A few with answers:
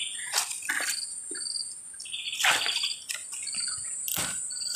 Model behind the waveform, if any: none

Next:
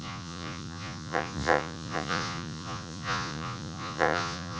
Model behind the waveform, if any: vocoder, Vocos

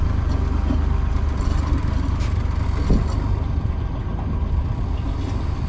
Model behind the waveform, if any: none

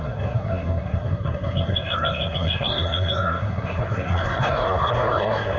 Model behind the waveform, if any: codec, SNAC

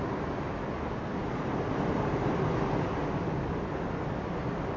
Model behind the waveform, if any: none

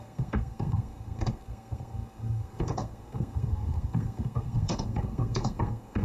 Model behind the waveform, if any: codec, SNAC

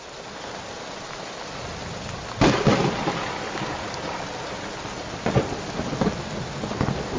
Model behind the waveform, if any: none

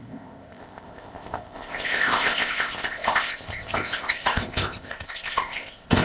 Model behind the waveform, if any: codec, ZipCodec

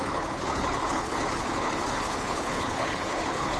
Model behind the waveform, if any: codec, HILCodec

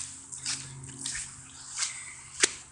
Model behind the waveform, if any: none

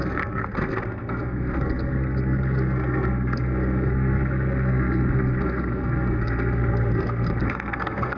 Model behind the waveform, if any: codec, SNAC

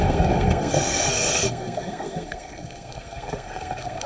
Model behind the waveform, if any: codec, SNAC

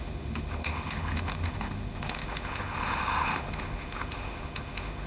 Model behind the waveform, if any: autoencoder, DAC-VAE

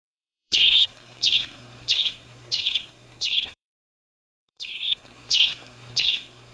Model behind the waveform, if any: codec, SNAC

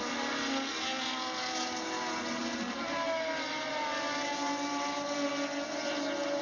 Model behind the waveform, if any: none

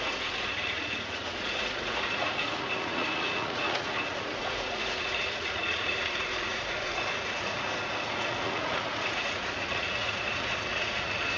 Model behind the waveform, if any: vocoder, Vocos